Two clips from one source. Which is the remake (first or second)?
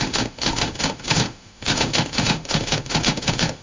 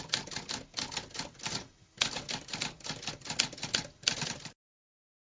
first